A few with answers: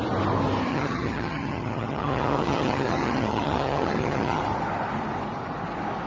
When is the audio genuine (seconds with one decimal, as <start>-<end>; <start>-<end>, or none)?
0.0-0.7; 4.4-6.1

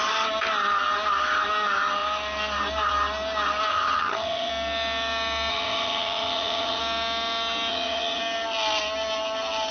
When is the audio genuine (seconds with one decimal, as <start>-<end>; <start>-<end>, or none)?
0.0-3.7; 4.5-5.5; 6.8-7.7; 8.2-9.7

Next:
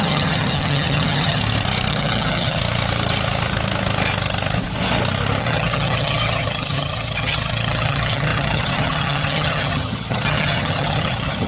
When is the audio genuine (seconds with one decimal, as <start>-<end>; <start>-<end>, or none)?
1.4-1.9; 2.6-5.4

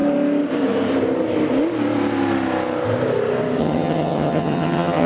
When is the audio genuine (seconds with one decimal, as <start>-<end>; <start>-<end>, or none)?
0.0-3.6